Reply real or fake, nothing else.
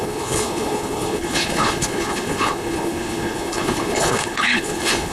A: fake